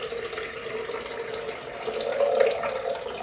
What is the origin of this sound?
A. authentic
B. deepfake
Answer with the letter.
A